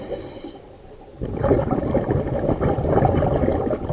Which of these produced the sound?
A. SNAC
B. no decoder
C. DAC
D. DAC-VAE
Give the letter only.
B